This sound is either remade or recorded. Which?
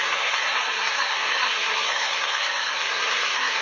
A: remade